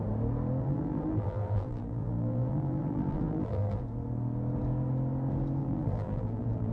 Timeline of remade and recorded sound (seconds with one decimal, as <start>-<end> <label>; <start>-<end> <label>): 0.0-0.6 recorded; 0.6-3.8 remade; 3.8-5.6 recorded; 5.6-6.7 remade